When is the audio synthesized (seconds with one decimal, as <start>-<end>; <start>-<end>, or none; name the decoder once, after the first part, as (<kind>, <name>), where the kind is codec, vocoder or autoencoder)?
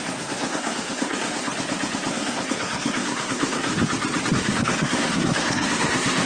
0.0-1.5 (codec, SNAC); 2.1-3.7; 4.3-6.3